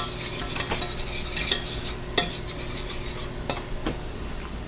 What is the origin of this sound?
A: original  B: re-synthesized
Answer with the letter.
A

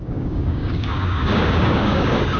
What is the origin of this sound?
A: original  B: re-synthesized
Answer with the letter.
B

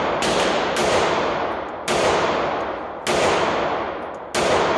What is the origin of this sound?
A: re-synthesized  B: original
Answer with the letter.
B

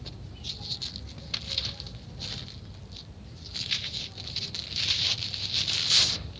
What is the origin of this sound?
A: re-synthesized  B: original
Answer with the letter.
B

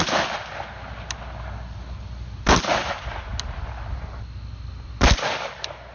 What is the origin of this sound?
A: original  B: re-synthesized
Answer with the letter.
A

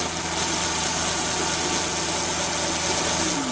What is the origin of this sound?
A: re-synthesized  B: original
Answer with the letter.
B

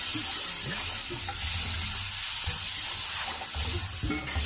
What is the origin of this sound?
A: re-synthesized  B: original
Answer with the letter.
B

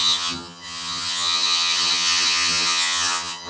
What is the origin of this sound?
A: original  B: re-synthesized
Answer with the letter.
B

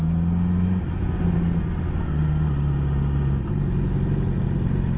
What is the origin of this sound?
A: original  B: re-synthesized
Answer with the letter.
A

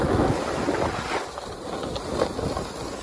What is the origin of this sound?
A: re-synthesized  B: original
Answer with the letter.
B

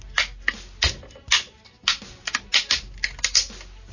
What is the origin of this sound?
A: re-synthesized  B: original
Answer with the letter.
B